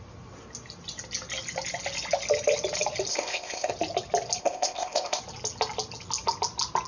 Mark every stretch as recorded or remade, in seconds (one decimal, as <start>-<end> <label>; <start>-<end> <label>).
0.0-3.1 recorded; 3.1-3.7 remade; 3.7-4.4 recorded; 4.4-5.2 remade; 5.2-6.9 recorded